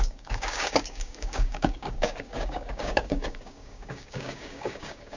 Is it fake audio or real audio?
fake